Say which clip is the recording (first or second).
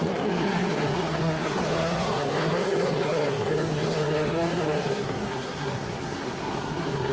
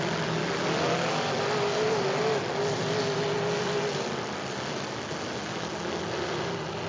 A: second